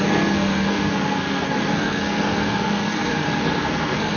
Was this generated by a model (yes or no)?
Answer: yes